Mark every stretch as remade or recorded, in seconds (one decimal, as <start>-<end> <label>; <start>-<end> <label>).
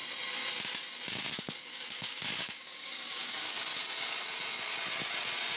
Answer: 0.0-1.1 recorded; 1.1-3.7 remade; 3.7-5.6 recorded